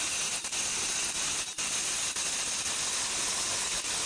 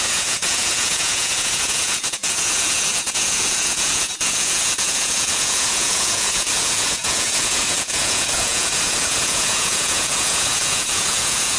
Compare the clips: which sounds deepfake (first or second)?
second